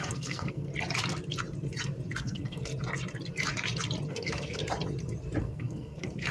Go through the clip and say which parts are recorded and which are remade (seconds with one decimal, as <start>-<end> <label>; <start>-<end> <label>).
0.0-0.7 remade; 0.7-2.2 recorded; 2.2-2.7 remade; 2.7-4.1 recorded; 4.1-4.6 remade; 4.6-5.4 recorded; 5.4-6.3 remade